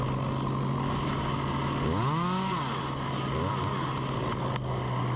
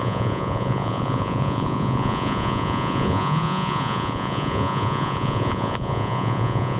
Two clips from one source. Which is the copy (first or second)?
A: second